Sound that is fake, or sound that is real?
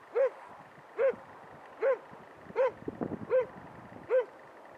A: real